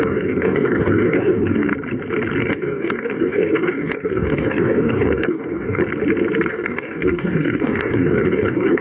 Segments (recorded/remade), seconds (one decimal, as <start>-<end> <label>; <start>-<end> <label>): 0.0-1.7 remade; 1.7-2.4 recorded; 2.4-5.8 remade; 5.8-6.5 recorded; 6.5-8.8 remade